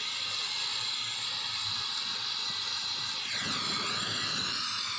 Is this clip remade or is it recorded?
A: recorded